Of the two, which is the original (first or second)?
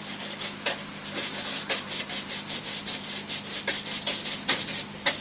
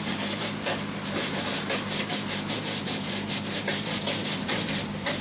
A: first